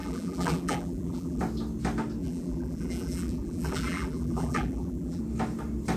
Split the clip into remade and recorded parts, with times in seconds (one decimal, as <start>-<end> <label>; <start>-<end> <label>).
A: 0.0-1.4 remade; 1.4-2.2 recorded; 2.2-5.2 remade; 5.2-6.0 recorded